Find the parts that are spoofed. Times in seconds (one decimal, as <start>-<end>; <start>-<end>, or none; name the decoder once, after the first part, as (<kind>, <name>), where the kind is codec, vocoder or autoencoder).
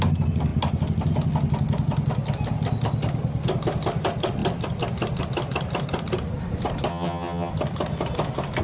6.9-7.5 (vocoder, HiFi-GAN)